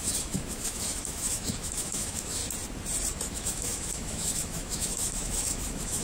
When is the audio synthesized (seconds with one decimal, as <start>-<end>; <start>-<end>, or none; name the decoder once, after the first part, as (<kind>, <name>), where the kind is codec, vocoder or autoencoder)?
0.0-2.4 (autoencoder, DAC-VAE); 3.3-6.0